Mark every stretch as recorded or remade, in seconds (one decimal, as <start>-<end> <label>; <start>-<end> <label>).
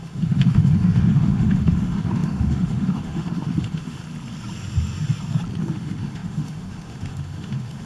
0.0-4.0 remade; 4.0-5.6 recorded; 5.6-7.9 remade